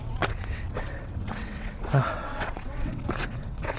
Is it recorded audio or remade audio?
remade